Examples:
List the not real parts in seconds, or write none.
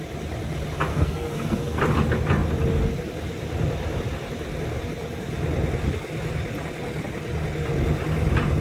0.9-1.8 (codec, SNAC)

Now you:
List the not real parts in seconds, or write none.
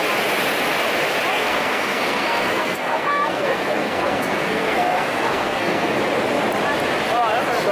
1.3-5.9 (codec, SNAC)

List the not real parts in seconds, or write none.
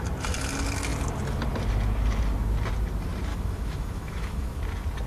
3.3-4.6 (autoencoder, DAC-VAE)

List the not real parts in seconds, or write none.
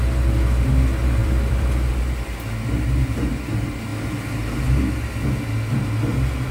1.2-1.9 (vocoder, BigVGAN v2)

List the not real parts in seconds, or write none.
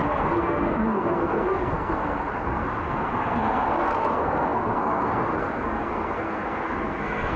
0.0-7.4 (codec, SNAC)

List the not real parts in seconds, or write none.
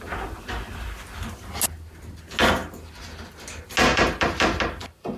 3.9-4.8 (vocoder, BigVGAN v2)